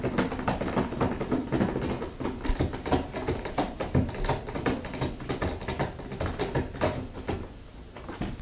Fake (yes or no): no